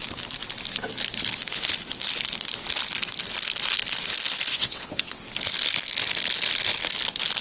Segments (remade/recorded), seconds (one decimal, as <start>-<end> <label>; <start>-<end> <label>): 0.0-4.5 recorded; 4.5-5.2 remade; 5.2-7.4 recorded